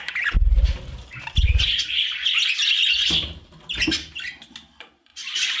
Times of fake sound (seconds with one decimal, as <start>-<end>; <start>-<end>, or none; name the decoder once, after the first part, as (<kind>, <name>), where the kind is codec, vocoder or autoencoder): 5.1-5.6 (vocoder, BigVGAN v2)